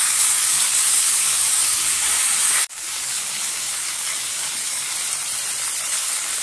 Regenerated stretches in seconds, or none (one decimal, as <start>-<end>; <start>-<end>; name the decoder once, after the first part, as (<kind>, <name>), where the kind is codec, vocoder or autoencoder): 0.0-4.9 (codec, DAC); 5.9-6.4